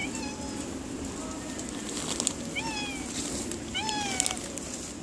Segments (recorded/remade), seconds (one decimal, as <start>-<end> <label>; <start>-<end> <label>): 0.0-5.0 recorded